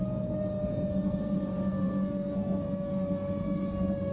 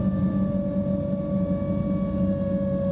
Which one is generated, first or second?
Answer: first